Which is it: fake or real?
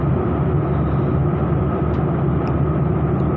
real